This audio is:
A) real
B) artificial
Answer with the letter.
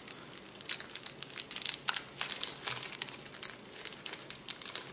A